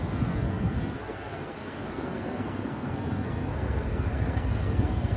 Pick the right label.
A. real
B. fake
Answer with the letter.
B